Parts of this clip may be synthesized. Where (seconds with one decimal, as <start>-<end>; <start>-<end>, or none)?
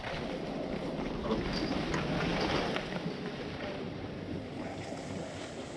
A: none